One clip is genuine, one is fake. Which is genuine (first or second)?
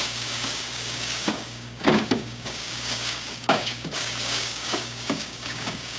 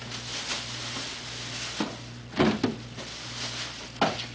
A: second